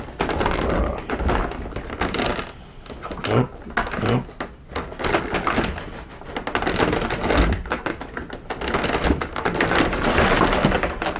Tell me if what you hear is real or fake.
real